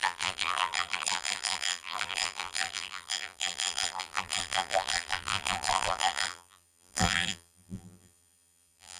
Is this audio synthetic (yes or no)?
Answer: yes